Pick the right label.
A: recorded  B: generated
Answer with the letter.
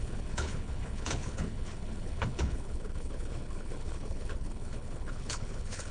B